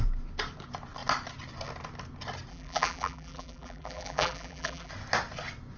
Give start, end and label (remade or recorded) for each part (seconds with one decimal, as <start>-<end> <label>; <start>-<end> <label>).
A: 0.0-2.5 recorded; 2.5-4.9 remade; 4.9-5.8 recorded